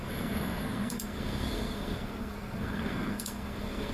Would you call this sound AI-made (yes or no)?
yes